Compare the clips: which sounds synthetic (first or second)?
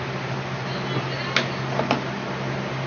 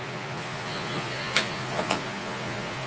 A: second